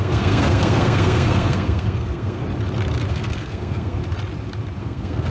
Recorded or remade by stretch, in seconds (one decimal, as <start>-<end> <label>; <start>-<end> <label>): 0.0-2.4 remade; 2.4-3.1 recorded; 3.1-4.0 remade; 4.0-4.8 recorded; 4.8-5.3 remade